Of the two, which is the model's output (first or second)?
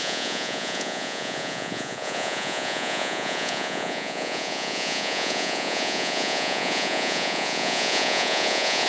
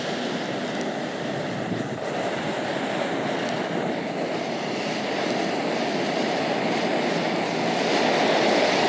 first